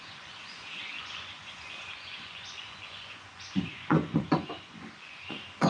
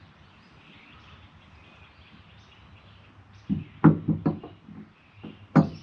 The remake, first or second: first